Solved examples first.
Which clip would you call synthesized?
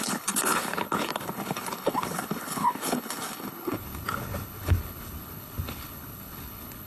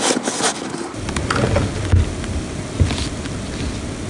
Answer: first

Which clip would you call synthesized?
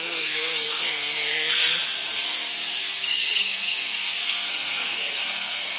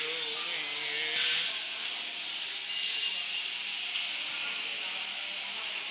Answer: first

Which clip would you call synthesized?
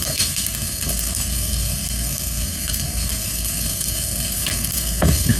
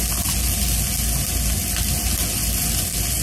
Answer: first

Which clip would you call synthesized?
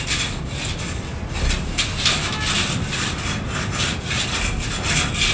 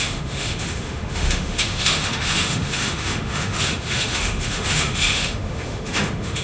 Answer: second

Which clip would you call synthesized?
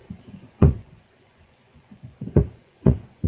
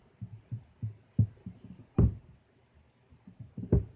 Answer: first